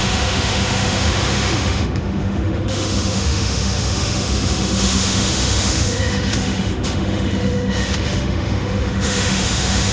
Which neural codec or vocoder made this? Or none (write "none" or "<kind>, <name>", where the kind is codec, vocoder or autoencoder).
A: autoencoder, DAC-VAE